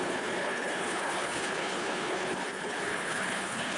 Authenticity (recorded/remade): remade